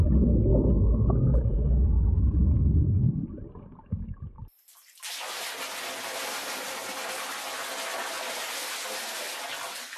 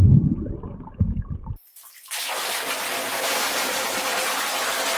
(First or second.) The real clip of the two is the first